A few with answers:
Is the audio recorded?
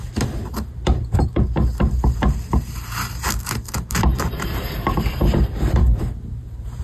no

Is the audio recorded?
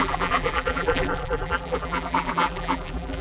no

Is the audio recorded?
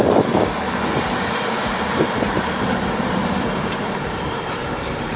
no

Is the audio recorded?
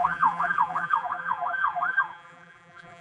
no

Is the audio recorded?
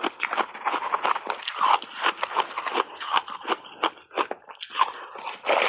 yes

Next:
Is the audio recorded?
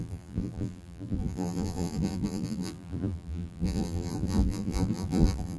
no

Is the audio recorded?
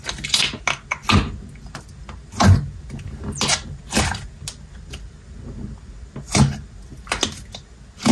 yes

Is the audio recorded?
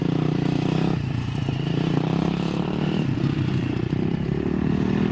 no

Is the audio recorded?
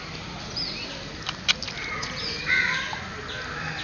yes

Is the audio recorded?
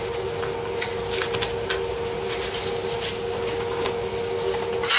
yes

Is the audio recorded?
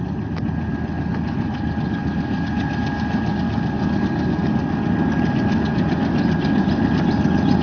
yes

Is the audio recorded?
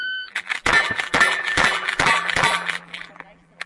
no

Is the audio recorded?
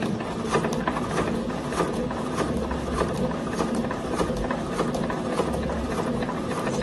yes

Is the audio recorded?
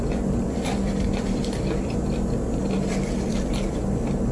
no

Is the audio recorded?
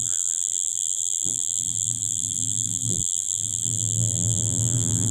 no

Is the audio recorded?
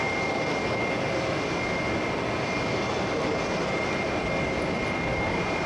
yes